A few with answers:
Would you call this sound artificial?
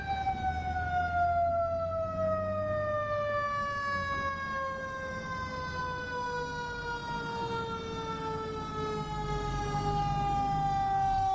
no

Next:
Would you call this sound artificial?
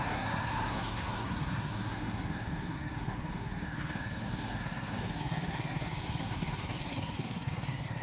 yes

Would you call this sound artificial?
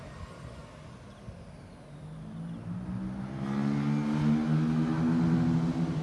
no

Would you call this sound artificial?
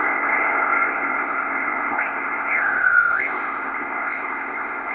yes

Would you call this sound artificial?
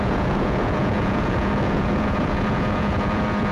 yes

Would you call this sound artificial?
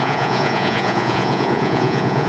yes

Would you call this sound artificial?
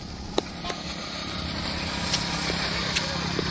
no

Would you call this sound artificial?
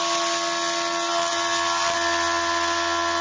no